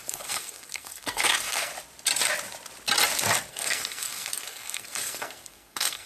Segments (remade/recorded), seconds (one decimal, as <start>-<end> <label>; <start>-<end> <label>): 0.0-1.7 remade; 1.7-3.5 recorded; 3.5-6.1 remade